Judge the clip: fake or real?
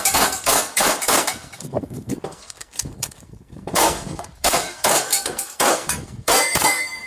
fake